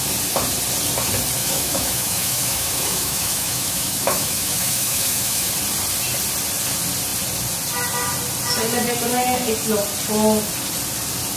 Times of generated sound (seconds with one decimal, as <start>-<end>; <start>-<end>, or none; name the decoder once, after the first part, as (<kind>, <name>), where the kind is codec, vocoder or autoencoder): 1.4-5.5 (autoencoder, DAC-VAE)